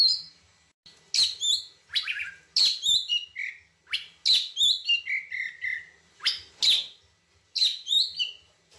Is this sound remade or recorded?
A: recorded